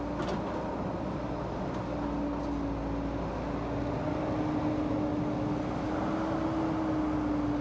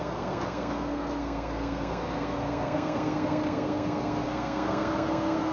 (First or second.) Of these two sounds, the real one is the first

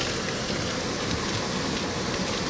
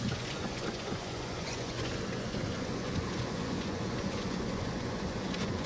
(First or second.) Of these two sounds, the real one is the first